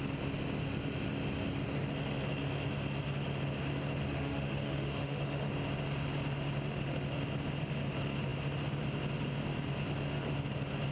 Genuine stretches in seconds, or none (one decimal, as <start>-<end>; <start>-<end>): 0.0-4.1; 5.5-10.9